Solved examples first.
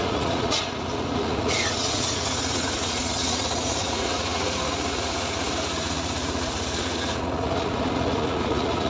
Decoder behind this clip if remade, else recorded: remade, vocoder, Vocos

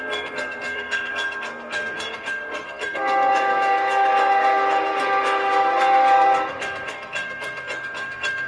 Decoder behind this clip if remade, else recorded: remade, codec, SNAC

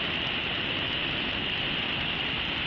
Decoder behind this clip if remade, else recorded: recorded